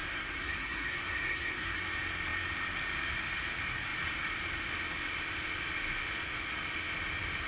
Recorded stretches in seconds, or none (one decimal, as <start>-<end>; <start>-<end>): 1.8-7.5

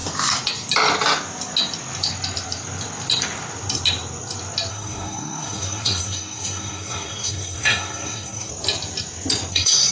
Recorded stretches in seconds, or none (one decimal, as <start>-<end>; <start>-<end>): 0.0-4.7; 8.5-9.5